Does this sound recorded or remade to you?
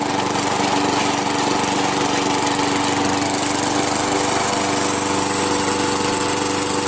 recorded